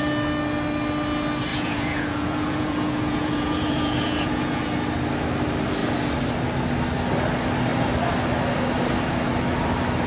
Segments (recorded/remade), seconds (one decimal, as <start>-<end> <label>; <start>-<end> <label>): 0.0-1.5 recorded; 1.5-4.6 remade; 4.6-10.1 recorded